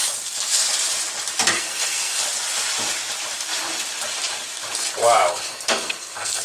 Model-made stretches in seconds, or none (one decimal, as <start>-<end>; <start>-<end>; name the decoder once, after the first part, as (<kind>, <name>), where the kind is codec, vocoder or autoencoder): 1.6-2.2 (codec, SNAC); 5.3-6.4